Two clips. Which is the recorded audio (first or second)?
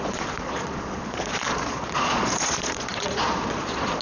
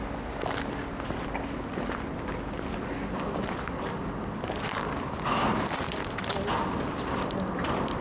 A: second